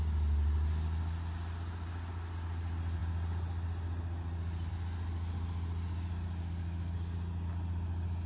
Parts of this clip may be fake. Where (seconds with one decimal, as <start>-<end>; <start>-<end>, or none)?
none